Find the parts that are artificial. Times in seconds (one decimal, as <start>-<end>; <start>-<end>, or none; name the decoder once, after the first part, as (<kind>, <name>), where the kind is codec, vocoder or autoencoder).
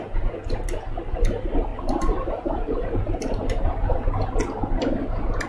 1.7-4.1 (vocoder, BigVGAN v2)